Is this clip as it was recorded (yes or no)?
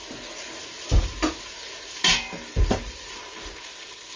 yes